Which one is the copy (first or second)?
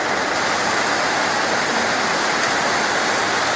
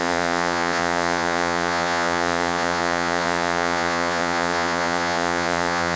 second